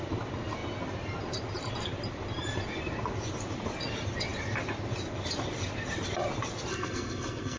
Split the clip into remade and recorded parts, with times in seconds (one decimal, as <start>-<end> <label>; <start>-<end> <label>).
0.0-6.7 recorded; 6.7-7.6 remade